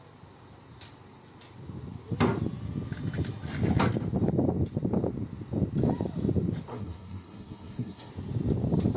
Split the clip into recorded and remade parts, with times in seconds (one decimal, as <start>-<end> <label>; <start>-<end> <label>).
0.0-6.7 recorded; 6.7-8.1 remade; 8.1-9.0 recorded